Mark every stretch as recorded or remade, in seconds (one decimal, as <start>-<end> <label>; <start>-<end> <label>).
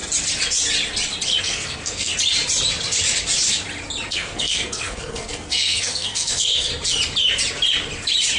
0.0-1.4 recorded; 1.4-2.1 remade; 2.1-4.1 recorded; 4.1-6.7 remade; 6.7-8.4 recorded